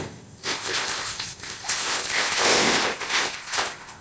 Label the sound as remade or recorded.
remade